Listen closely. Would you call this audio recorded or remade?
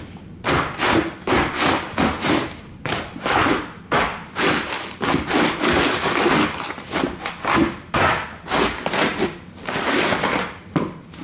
recorded